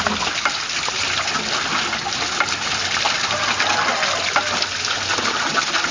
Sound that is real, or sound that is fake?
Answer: real